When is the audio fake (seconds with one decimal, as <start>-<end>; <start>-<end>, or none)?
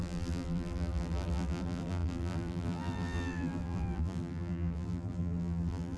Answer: 0.0-6.0